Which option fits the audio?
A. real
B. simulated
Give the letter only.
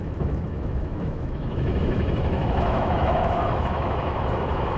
B